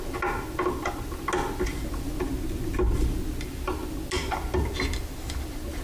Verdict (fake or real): real